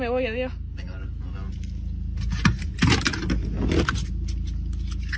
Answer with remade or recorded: recorded